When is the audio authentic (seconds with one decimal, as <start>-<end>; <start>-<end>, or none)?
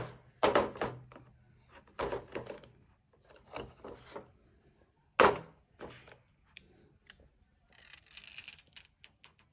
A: 0.0-9.5